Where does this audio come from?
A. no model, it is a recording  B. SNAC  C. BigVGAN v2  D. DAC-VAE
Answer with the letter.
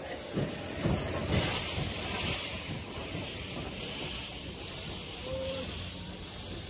C